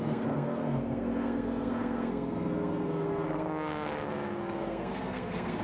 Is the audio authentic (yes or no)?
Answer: no